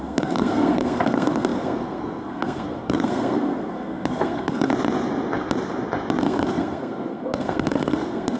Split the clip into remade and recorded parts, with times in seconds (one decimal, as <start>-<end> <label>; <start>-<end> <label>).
0.0-4.7 remade; 4.7-6.2 recorded; 6.2-8.4 remade